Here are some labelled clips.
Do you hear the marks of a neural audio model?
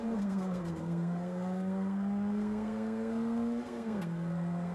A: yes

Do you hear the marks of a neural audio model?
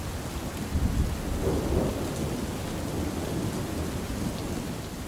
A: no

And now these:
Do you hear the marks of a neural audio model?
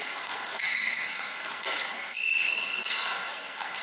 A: yes